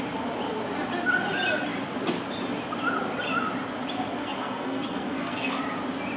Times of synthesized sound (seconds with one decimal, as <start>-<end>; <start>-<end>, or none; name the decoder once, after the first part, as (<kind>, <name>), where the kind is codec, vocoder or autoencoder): 4.2-5.6 (codec, SNAC)